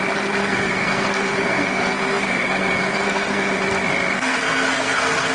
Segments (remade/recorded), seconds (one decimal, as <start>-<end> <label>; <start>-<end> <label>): 0.0-0.4 recorded; 0.4-3.6 remade; 3.6-4.1 recorded; 4.1-5.3 remade